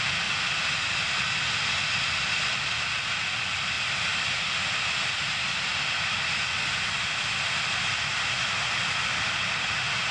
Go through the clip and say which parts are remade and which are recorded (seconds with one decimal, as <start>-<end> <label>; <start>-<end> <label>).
0.0-10.1 recorded